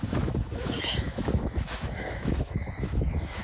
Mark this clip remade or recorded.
remade